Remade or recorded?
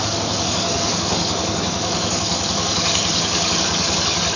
remade